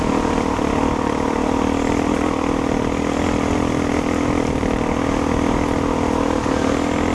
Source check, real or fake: real